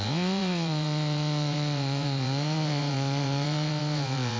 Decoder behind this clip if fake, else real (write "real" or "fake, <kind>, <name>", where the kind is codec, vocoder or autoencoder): fake, vocoder, WaveNeXt